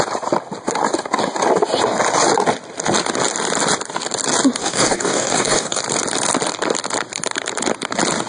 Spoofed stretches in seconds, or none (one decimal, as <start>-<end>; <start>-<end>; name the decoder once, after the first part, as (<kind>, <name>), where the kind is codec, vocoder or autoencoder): 4.6-5.8 (codec, DAC)